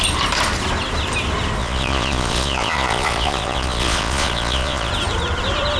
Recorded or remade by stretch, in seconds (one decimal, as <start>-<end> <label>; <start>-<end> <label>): 0.0-1.6 recorded; 1.6-4.9 remade; 4.9-5.8 recorded